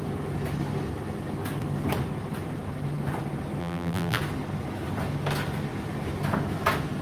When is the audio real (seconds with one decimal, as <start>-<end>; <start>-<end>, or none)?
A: 0.0-3.6; 4.2-7.0